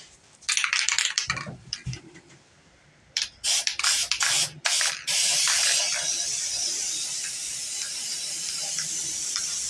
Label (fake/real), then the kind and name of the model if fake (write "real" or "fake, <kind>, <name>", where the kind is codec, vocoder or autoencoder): fake, vocoder, BigVGAN v2